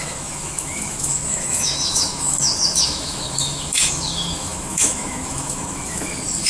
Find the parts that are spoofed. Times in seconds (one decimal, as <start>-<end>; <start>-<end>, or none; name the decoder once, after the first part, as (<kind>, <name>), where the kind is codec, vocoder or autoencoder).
0.0-6.5 (autoencoder, DAC-VAE)